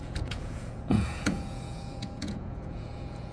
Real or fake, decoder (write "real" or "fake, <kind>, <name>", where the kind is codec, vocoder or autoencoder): fake, vocoder, Vocos